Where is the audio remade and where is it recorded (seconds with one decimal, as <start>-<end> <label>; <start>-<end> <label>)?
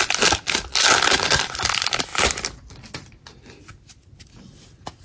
0.0-5.0 recorded